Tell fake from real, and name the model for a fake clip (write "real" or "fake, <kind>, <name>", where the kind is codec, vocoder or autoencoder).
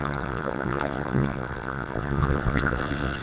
fake, vocoder, WaveNeXt